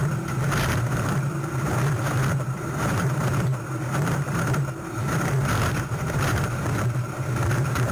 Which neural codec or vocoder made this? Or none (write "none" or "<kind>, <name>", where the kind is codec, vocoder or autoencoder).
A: vocoder, BigVGAN v2